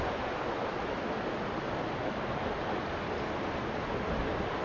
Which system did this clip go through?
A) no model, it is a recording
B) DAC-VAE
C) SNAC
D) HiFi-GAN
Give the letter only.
A